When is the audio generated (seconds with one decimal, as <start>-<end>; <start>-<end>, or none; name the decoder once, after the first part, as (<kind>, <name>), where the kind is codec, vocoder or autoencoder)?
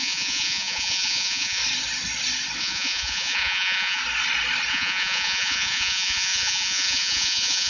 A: 0.0-1.6 (vocoder, Vocos); 2.6-4.0; 4.7-7.7